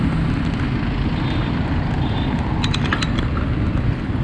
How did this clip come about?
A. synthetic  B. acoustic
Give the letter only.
B